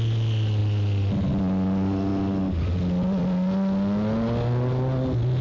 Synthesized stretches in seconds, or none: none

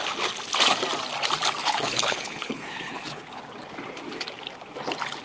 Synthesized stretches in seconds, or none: 1.6-3.4

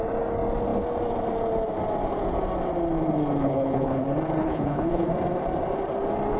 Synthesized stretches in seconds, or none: 3.4-4.0; 4.4-5.1

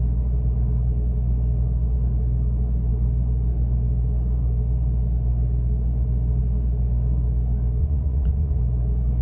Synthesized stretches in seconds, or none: 7.8-8.6

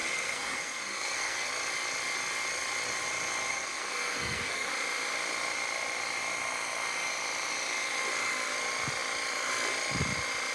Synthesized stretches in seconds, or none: 0.0-1.5; 3.5-4.7

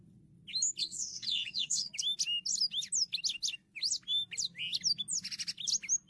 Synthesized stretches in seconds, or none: 0.8-1.9

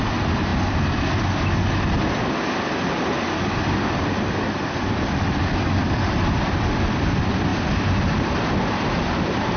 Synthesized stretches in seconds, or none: 0.0-0.5; 4.8-9.6